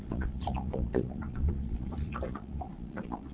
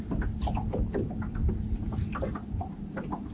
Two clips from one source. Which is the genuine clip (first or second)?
second